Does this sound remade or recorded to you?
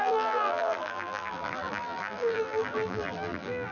remade